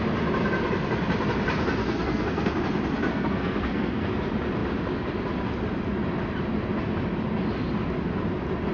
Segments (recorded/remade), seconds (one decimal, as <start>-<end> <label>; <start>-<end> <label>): 0.0-1.8 recorded; 1.8-2.5 remade; 2.5-3.1 recorded; 3.1-4.1 remade; 4.1-8.7 recorded